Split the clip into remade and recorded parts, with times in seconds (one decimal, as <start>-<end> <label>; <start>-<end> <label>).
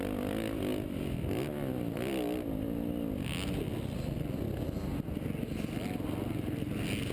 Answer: 0.0-7.1 recorded